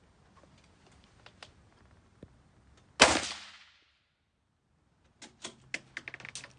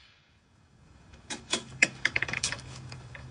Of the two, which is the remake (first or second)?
second